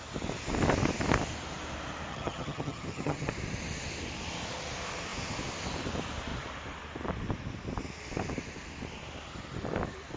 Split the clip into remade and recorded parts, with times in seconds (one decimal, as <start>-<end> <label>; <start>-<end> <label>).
0.0-2.1 recorded; 2.1-3.3 remade; 3.3-10.2 recorded

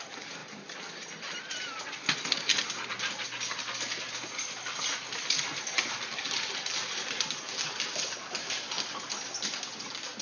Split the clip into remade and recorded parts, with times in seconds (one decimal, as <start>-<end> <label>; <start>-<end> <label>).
0.0-10.2 recorded